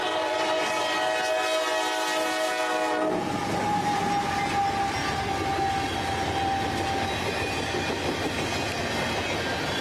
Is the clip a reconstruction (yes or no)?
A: no